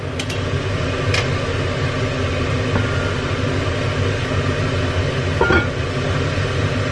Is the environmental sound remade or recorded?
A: recorded